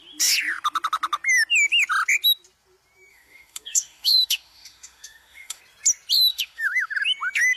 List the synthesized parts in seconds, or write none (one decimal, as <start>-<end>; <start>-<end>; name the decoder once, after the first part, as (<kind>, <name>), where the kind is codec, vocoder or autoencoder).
3.1-5.6 (autoencoder, DAC-VAE); 6.3-6.9